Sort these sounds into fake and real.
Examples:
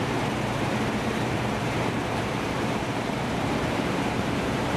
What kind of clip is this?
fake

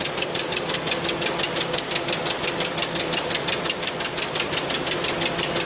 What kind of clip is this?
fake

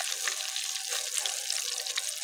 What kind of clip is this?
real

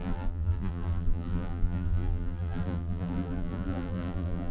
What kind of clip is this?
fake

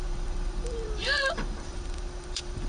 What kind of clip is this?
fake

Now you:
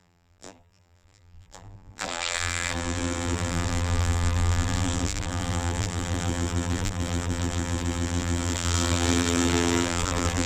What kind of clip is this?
fake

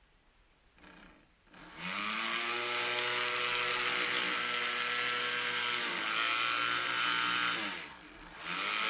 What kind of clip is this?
real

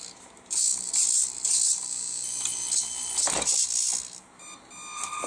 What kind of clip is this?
real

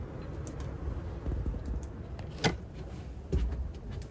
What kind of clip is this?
real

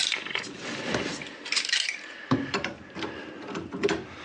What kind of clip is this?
fake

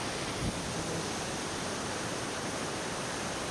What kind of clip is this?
real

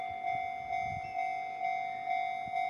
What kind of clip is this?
real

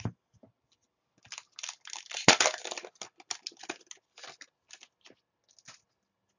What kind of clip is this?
real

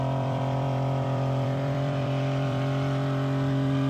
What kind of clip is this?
fake